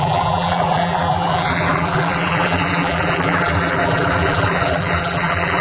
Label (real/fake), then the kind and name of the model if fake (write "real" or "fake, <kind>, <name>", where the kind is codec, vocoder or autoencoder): fake, vocoder, BigVGAN v2